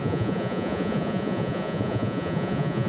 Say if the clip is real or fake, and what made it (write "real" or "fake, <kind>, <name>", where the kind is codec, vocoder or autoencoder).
fake, vocoder, Vocos